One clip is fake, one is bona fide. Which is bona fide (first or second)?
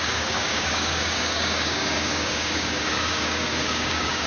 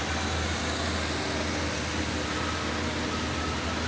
second